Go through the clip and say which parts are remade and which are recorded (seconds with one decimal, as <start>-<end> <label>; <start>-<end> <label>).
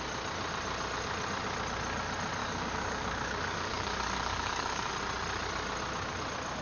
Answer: 0.0-2.4 recorded; 2.4-4.9 remade; 4.9-6.6 recorded